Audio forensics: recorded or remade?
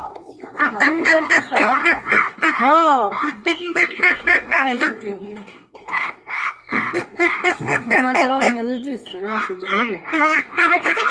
remade